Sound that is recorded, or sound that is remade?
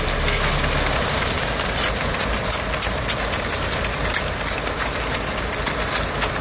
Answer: recorded